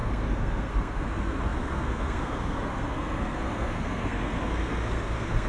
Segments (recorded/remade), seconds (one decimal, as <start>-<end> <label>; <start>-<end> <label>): 0.0-5.5 remade